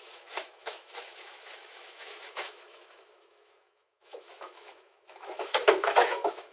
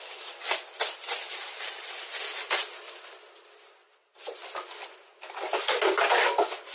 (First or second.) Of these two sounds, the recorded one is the second